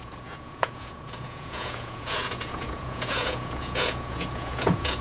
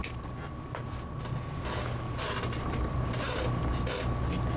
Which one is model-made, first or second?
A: first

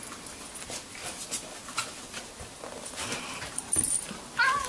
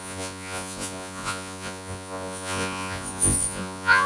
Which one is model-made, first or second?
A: second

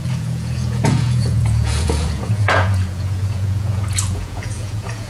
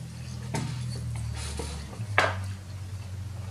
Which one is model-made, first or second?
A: first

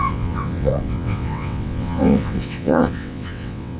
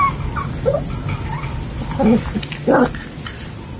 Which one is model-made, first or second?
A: first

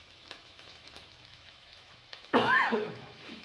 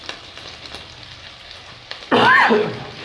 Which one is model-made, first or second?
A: first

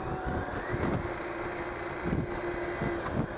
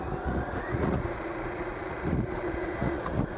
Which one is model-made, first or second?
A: second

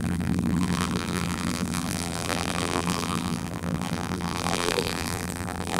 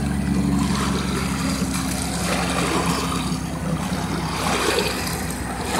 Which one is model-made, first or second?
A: first